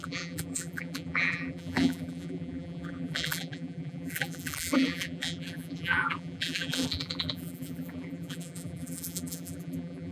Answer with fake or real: fake